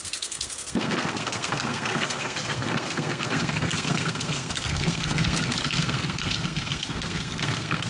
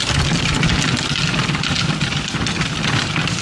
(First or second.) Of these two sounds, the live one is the second